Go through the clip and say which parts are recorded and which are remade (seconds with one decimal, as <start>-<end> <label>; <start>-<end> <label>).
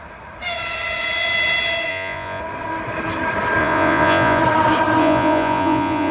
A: 0.0-1.9 recorded; 1.9-2.4 remade; 2.4-3.6 recorded; 3.6-4.4 remade; 4.4-5.0 recorded; 5.0-6.1 remade